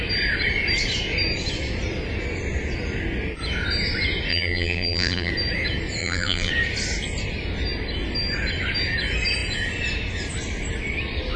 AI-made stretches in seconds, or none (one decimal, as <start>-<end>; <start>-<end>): 4.3-5.3; 6.0-6.5